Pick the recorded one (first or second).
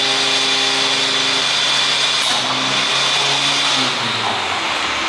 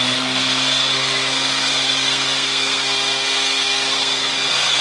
first